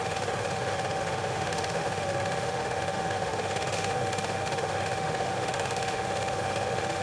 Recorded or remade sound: remade